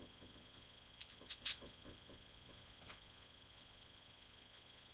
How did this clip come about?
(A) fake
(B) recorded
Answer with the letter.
A